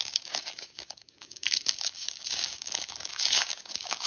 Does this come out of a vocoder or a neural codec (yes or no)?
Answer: yes